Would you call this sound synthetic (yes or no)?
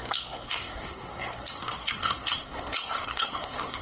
yes